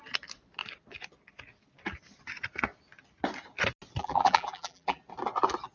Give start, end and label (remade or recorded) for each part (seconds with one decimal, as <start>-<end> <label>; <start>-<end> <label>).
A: 0.0-4.0 recorded; 4.0-5.0 remade; 5.0-5.7 recorded